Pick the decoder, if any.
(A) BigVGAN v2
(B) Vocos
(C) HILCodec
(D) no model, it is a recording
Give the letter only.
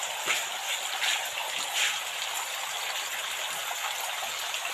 D